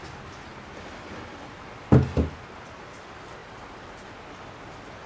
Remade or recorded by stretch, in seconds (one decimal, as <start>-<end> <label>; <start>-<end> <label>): 0.0-3.4 recorded; 3.4-4.1 remade; 4.1-5.1 recorded